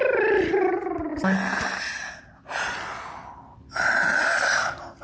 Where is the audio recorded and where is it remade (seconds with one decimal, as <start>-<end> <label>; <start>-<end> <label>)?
0.0-5.0 recorded